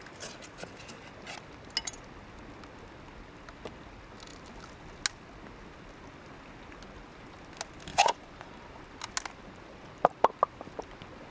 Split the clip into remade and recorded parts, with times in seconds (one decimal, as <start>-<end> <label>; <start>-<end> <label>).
0.0-7.9 recorded; 7.9-8.5 remade; 8.5-11.3 recorded